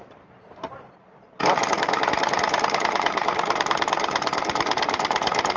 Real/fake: fake